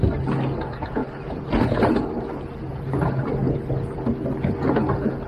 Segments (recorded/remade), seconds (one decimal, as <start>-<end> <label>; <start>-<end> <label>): 0.0-5.3 recorded